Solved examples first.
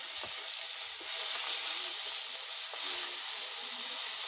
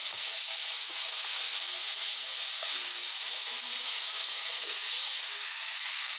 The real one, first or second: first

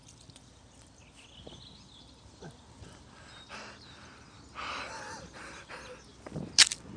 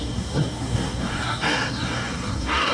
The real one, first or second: first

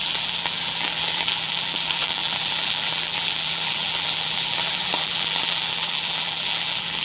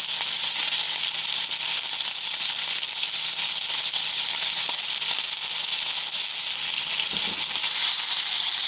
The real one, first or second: second